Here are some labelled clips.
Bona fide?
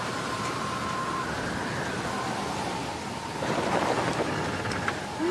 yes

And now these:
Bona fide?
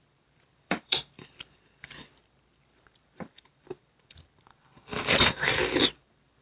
no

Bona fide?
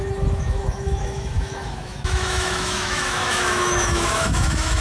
no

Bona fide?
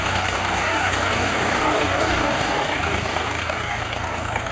no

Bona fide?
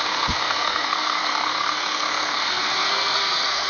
no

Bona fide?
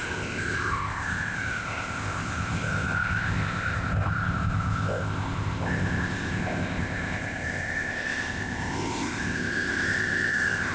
no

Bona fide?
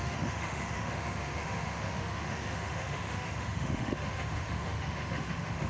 no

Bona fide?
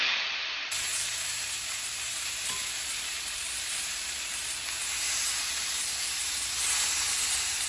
no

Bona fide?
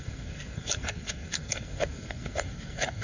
no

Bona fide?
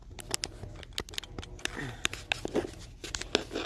yes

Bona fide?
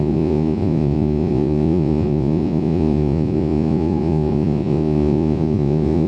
no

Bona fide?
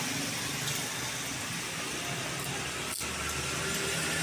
yes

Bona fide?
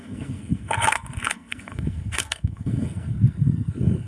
no